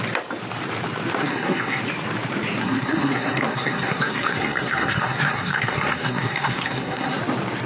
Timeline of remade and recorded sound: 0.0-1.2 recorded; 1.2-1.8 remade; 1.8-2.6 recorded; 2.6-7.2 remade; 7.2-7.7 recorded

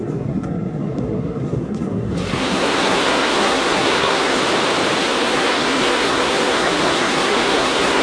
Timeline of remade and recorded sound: 0.0-4.4 remade; 4.4-5.0 recorded; 5.0-8.0 remade